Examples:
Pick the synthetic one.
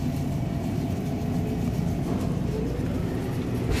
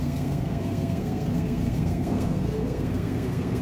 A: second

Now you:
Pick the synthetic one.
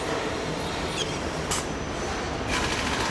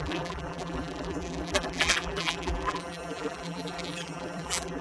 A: second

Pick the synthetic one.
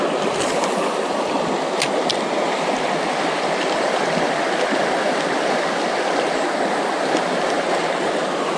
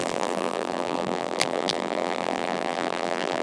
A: second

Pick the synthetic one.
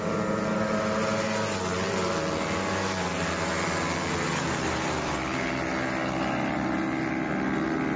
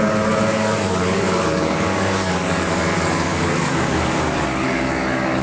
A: second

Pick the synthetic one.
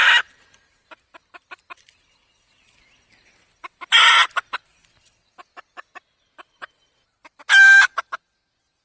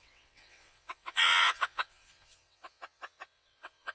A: second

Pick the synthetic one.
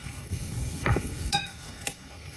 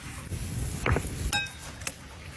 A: first